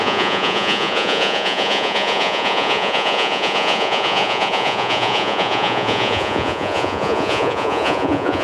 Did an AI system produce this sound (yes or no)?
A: yes